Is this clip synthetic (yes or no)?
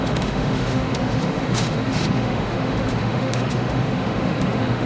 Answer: yes